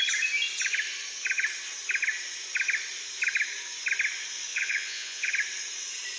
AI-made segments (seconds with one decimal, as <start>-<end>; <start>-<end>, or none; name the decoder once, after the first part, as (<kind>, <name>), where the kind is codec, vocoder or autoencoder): 4.5-5.3 (vocoder, Vocos)